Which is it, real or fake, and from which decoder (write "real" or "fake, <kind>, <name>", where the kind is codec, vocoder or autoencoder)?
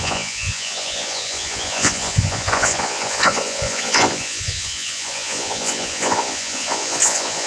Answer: fake, vocoder, Vocos